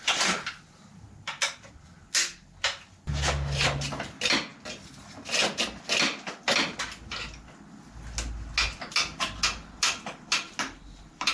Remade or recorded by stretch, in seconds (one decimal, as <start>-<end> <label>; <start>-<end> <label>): 0.0-11.3 recorded